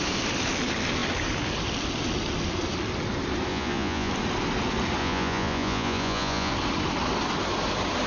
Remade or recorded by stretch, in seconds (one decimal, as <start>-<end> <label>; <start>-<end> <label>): 0.0-3.5 recorded; 3.5-4.1 remade; 4.1-5.0 recorded; 5.0-6.5 remade; 6.5-8.1 recorded